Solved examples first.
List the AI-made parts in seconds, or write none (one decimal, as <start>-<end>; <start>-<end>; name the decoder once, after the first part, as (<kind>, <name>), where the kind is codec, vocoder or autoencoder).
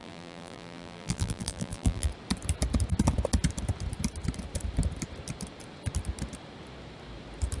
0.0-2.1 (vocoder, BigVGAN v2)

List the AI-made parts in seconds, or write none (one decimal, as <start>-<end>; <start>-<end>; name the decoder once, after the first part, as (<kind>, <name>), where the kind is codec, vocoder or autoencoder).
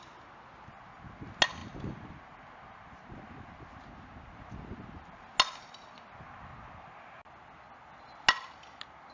none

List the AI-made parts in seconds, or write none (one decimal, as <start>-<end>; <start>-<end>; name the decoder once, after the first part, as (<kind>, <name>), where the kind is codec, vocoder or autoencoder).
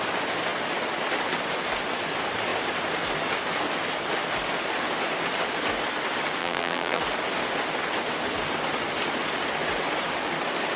6.4-7.0 (vocoder, BigVGAN v2)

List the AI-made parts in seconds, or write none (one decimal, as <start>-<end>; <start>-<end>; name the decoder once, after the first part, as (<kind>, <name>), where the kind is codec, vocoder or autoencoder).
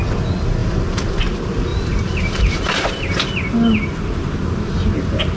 1.7-2.9 (vocoder, BigVGAN v2)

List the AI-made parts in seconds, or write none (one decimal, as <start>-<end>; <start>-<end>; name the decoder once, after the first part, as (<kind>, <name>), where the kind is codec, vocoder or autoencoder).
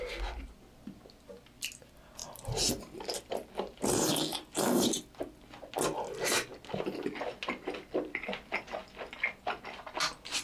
2.2-3.3 (vocoder, BigVGAN v2); 4.3-5.0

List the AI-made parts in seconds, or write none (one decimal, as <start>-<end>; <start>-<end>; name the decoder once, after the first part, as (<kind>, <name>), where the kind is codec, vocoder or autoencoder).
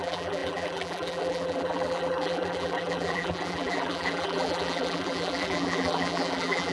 0.0-6.7 (vocoder, BigVGAN v2)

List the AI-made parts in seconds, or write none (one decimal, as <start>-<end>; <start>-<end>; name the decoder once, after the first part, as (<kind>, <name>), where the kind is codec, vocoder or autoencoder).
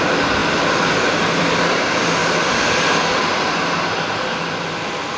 0.0-0.4 (vocoder, BigVGAN v2); 1.1-2.2; 4.2-5.2